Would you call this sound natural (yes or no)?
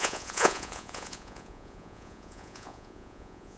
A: no